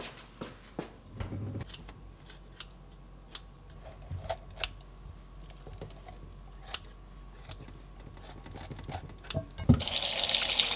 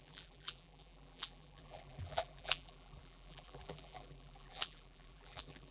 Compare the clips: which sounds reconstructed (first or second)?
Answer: second